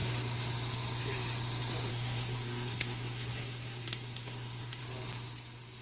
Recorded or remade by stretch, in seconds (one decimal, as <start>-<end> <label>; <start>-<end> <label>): 0.0-1.9 recorded; 1.9-4.8 remade; 4.8-5.8 recorded